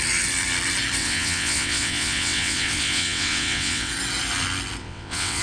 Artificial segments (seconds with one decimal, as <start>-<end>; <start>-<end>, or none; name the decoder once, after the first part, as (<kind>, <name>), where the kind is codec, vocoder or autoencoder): 1.0-3.9 (vocoder, WaveNeXt); 4.8-5.4